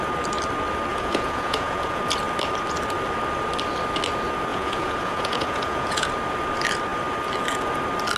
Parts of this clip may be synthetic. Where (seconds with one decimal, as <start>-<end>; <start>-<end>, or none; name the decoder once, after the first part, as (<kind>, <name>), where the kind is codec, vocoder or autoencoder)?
0.9-2.0 (vocoder, Vocos); 4.5-6.1